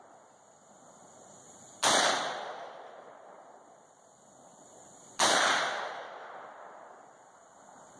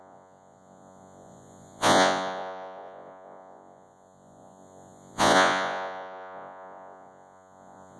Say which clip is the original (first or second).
first